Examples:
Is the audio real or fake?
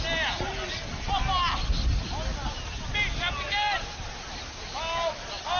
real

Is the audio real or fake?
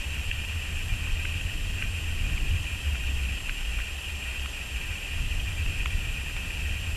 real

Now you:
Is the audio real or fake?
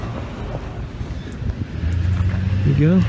real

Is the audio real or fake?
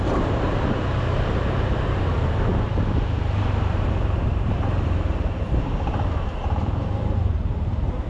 fake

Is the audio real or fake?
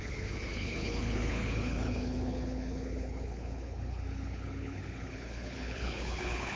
fake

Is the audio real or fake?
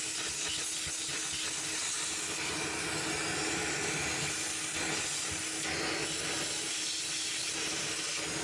real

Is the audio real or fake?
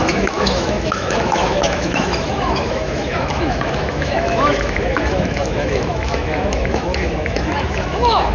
fake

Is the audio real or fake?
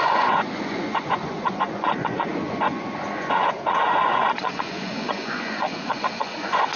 fake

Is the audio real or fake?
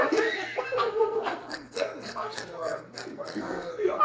fake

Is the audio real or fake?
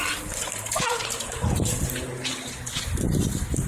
real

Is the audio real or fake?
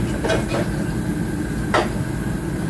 real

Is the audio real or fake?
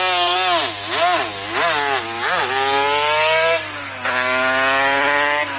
real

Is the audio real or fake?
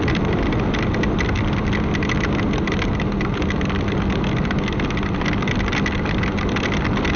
real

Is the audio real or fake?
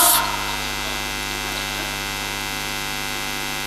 real